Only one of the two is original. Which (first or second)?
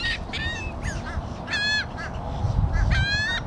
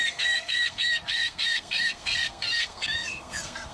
first